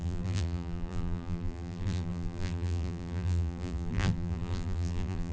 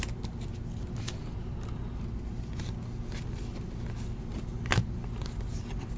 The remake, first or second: first